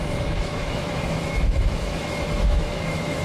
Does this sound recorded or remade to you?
remade